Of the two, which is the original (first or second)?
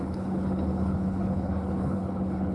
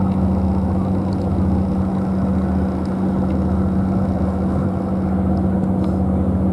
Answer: second